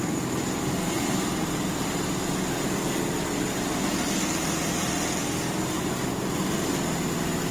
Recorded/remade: recorded